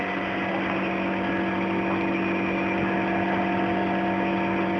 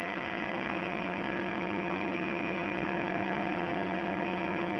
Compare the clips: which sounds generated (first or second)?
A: second